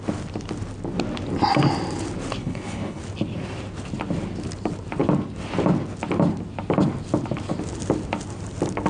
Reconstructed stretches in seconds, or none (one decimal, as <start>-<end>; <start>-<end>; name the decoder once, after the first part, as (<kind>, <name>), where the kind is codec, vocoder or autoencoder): 2.4-3.0 (codec, HILCodec)